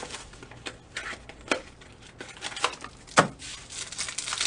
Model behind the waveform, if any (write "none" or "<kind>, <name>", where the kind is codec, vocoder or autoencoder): none